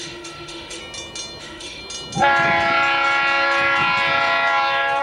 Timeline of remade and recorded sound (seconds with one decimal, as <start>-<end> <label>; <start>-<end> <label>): 0.0-0.8 remade; 0.8-1.4 recorded; 1.4-1.8 remade; 1.8-5.0 recorded